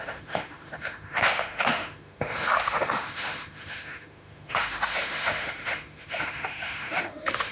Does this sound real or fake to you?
fake